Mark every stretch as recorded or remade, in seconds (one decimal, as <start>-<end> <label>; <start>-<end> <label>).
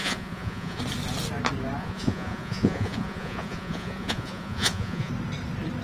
0.0-0.8 remade; 0.8-1.8 recorded; 1.8-5.1 remade; 5.1-5.8 recorded